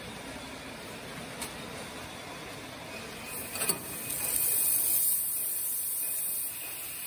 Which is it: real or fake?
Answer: real